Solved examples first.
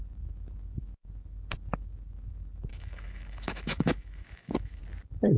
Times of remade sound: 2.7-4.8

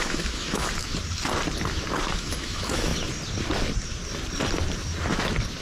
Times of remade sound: 0.0-0.9; 2.1-2.9